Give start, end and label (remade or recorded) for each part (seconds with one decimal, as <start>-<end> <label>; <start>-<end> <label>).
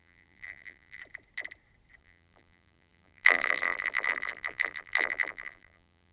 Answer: 0.0-1.0 remade; 1.0-2.0 recorded; 2.0-6.1 remade